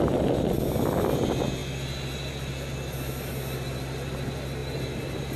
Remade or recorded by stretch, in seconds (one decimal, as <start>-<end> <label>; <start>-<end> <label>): 0.0-5.4 recorded